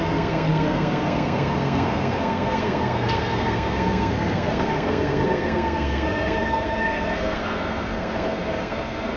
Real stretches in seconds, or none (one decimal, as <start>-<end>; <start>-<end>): none